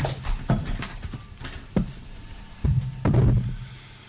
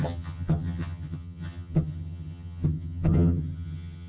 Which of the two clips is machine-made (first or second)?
second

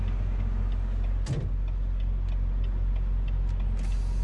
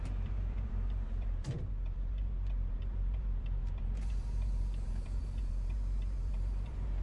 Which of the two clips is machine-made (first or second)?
second